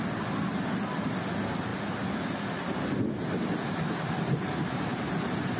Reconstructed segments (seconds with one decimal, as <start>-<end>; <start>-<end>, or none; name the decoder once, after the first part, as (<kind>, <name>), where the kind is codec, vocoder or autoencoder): none